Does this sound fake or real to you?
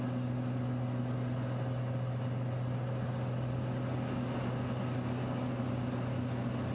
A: real